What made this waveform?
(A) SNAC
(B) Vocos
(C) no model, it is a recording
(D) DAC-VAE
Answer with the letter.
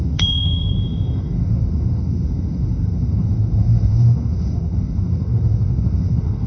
D